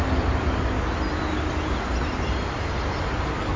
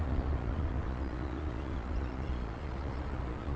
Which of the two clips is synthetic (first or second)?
second